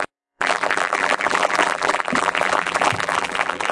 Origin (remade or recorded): remade